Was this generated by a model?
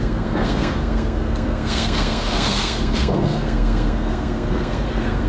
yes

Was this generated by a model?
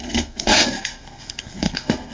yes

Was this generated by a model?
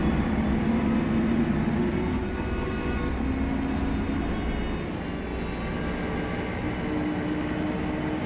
no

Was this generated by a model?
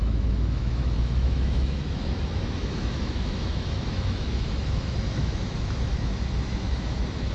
yes